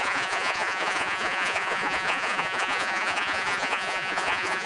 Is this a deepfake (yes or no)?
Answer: yes